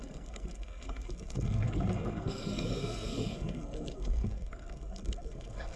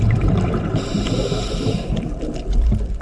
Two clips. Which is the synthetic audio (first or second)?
first